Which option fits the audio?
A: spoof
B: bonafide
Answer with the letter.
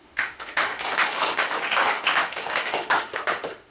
A